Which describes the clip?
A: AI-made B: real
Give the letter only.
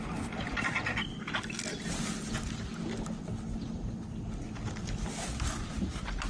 B